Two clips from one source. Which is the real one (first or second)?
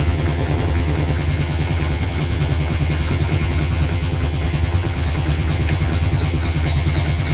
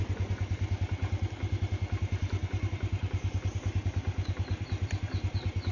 second